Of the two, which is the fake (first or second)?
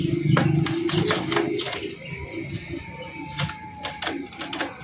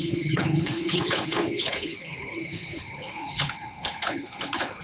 second